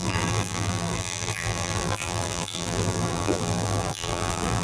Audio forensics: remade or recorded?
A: remade